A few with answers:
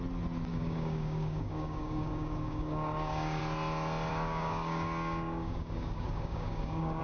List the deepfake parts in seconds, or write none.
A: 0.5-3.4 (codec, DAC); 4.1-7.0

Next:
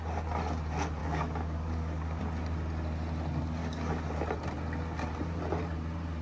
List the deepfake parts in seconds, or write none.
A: 1.0-2.2 (codec, DAC); 3.6-4.2

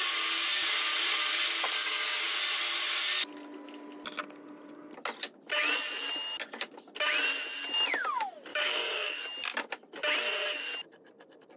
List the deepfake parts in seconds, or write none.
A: 1.8-2.4 (codec, DAC); 8.5-9.2